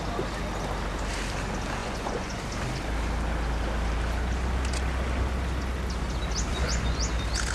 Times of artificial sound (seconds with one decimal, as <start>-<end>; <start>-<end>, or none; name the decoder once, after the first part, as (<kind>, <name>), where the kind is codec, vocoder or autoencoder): 1.8-2.4 (vocoder, Vocos); 6.5-7.0